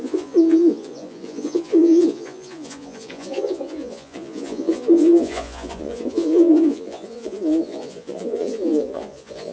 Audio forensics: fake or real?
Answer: fake